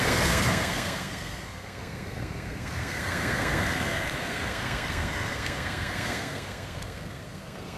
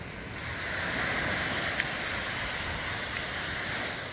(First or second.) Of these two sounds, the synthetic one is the first